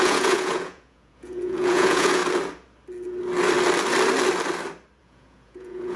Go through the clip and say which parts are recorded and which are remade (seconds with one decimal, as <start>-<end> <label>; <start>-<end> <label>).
0.0-2.2 remade; 2.2-5.0 recorded; 5.0-6.0 remade